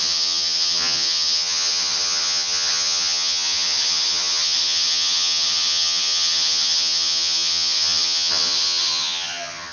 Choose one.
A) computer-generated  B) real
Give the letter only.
A